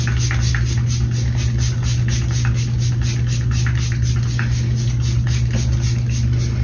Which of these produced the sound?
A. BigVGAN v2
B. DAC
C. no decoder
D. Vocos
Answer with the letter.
C